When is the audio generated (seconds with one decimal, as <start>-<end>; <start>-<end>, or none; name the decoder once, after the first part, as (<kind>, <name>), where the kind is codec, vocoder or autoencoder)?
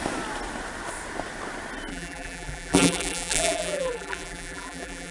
1.9-5.1 (vocoder, BigVGAN v2)